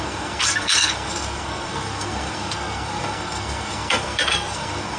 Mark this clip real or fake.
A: fake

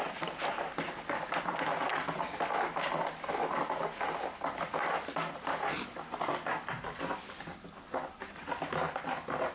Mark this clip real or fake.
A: real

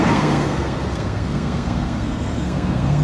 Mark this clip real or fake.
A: fake